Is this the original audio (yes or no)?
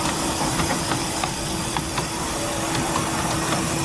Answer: yes